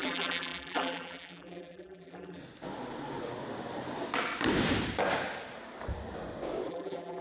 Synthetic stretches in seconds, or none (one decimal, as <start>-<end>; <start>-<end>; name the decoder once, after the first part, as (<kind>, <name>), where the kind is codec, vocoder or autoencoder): 0.0-2.4 (vocoder, BigVGAN v2); 6.7-7.2